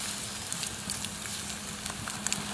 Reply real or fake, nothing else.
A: real